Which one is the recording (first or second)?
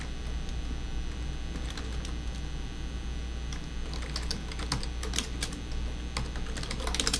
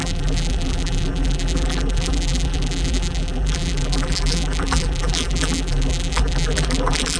first